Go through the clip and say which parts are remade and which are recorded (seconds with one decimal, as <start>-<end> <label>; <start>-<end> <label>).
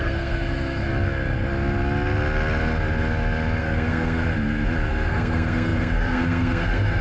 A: 0.0-0.9 remade; 0.9-3.6 recorded; 3.6-4.3 remade; 4.3-4.9 recorded; 4.9-7.0 remade